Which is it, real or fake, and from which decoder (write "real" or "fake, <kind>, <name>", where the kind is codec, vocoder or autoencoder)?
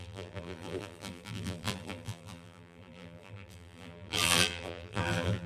fake, vocoder, BigVGAN v2